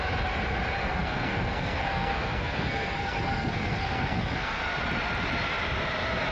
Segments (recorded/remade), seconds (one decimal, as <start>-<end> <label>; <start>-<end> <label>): 0.0-0.8 recorded; 0.8-4.6 remade; 4.6-6.3 recorded